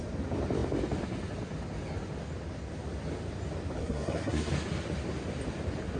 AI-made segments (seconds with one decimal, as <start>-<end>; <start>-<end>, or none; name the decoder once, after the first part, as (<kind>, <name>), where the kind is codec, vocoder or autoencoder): 3.8-4.5 (codec, SNAC)